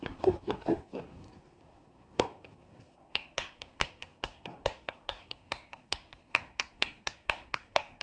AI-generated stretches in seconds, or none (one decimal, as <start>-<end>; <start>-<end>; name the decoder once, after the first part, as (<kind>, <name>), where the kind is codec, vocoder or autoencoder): 0.0-8.0 (codec, SNAC)